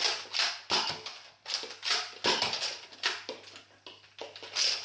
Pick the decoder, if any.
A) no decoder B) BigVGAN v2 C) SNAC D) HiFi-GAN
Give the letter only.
A